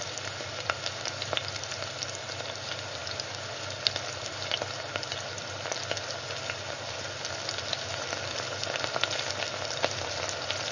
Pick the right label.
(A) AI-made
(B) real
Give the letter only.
B